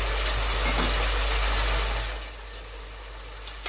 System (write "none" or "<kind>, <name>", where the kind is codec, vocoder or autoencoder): none